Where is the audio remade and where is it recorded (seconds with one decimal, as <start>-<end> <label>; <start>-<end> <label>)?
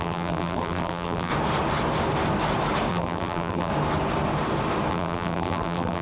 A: 0.0-1.3 remade; 1.3-2.9 recorded; 2.9-3.7 remade; 3.7-4.9 recorded; 4.9-6.0 remade